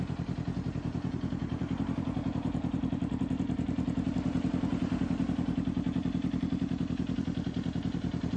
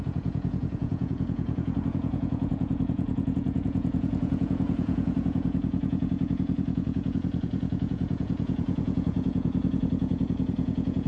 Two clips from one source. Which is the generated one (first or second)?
second